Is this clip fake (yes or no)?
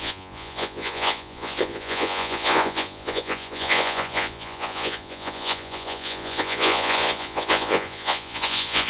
yes